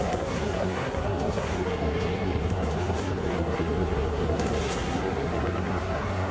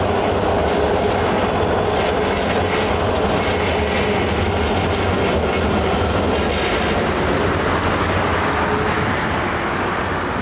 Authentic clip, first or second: second